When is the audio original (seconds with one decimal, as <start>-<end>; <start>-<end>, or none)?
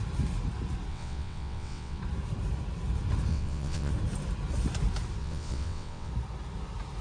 0.0-0.9; 2.0-3.3; 3.9-5.2; 6.1-7.0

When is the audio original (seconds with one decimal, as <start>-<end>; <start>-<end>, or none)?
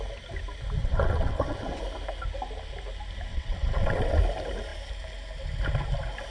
0.0-0.8; 1.8-3.3; 4.2-6.3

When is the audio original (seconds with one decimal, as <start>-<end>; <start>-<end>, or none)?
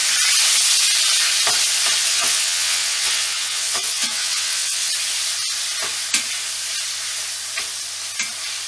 0.0-2.1; 4.9-8.7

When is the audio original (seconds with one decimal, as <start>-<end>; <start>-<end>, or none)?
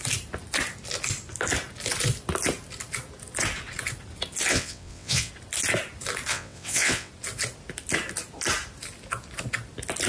0.0-4.5; 5.3-6.3; 7.1-10.1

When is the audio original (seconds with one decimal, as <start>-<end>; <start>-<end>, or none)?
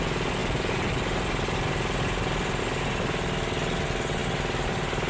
0.0-5.1